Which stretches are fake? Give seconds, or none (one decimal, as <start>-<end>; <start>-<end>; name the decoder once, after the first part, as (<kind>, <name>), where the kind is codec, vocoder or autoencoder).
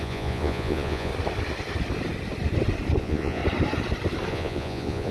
0.0-1.1 (vocoder, Vocos); 3.0-3.4; 4.3-5.1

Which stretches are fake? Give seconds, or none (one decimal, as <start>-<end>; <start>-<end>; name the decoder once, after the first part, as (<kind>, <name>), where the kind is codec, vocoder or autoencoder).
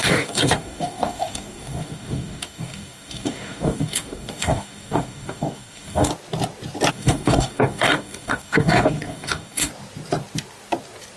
0.0-6.1 (codec, DAC); 6.9-9.7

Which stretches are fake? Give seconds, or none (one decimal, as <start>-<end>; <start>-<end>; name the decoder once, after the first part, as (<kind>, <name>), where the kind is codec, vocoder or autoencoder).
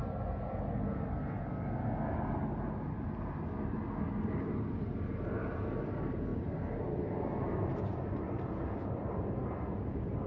none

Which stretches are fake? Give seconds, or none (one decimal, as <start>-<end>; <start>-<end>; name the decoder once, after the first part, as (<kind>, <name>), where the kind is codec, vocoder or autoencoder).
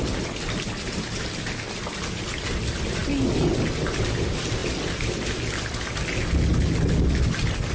none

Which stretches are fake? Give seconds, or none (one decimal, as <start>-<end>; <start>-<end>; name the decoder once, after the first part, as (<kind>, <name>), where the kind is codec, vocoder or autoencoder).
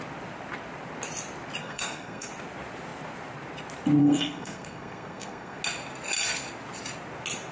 1.6-2.3 (codec, SNAC); 4.0-5.6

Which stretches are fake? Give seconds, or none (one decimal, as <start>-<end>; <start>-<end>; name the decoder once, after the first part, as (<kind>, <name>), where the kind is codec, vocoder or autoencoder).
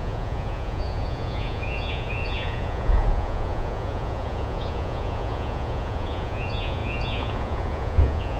0.0-8.4 (vocoder, Vocos)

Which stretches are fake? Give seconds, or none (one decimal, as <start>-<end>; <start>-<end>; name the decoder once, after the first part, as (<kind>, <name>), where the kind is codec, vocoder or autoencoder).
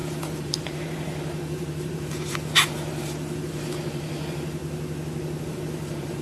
0.0-4.6 (vocoder, BigVGAN v2); 5.4-6.2